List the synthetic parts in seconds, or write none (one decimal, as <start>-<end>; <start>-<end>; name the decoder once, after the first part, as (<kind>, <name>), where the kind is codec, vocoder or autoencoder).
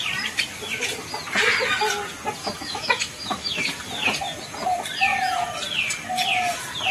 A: 2.4-3.7 (autoencoder, DAC-VAE)